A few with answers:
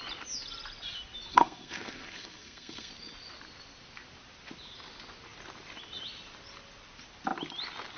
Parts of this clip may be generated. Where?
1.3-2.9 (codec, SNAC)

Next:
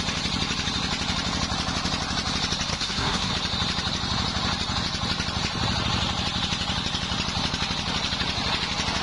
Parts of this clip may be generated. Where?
2.7-3.3 (codec, SNAC)

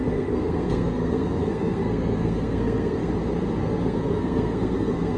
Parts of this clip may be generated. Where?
0.0-3.1 (codec, SNAC); 3.6-5.2

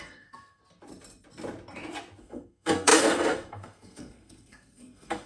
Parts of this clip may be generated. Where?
0.0-0.6 (codec, SNAC); 2.2-5.3